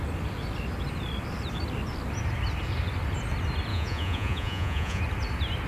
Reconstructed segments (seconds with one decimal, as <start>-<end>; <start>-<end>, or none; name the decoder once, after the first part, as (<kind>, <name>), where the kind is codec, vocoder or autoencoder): 3.7-5.0 (vocoder, Vocos)